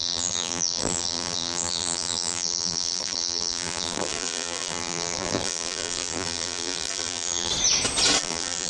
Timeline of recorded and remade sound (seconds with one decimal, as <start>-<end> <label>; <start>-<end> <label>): 0.0-7.5 remade; 7.5-8.2 recorded; 8.2-8.7 remade